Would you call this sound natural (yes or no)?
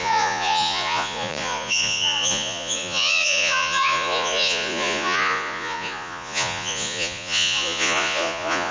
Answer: no